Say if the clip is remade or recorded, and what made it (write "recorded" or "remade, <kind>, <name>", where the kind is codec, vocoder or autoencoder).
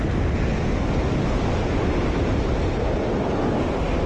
recorded